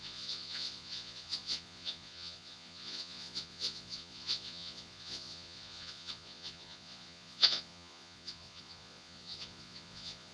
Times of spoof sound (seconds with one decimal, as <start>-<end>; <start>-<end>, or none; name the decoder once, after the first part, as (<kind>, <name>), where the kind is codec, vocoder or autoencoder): 0.0-10.3 (vocoder, Vocos)